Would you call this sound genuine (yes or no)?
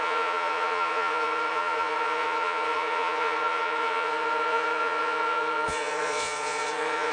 no